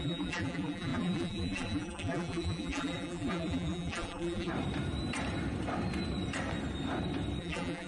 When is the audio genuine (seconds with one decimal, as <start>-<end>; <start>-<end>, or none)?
4.5-7.4